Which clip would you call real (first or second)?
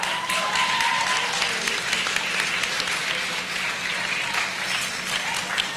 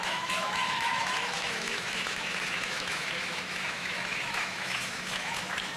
first